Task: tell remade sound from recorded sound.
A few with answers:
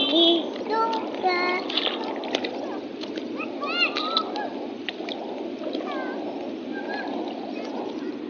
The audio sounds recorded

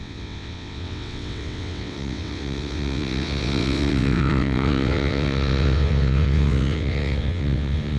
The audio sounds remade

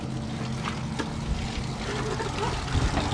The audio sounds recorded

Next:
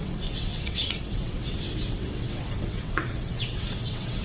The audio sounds remade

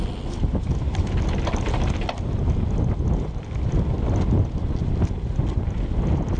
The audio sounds recorded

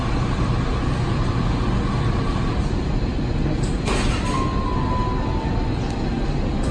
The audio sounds recorded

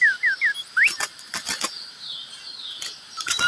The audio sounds recorded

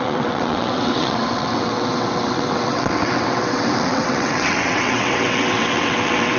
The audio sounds remade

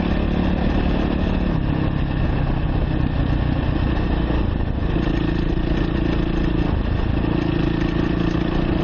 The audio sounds recorded